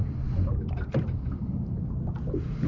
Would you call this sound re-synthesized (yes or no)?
no